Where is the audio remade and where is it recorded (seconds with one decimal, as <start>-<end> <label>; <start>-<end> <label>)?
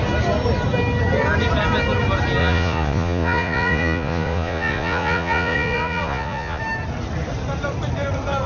0.0-2.4 recorded; 2.4-6.6 remade; 6.6-8.5 recorded